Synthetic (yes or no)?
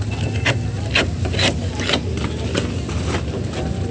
no